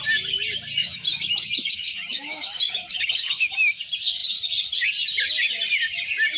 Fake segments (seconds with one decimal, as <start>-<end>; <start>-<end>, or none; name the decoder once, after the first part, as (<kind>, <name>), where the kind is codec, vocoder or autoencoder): 0.8-3.8 (autoencoder, DAC-VAE)